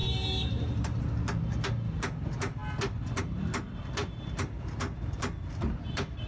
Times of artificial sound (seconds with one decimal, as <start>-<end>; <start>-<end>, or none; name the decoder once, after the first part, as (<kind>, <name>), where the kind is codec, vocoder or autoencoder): 0.0-1.0 (vocoder, BigVGAN v2); 4.0-6.3